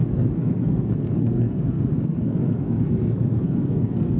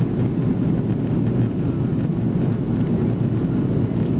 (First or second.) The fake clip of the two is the first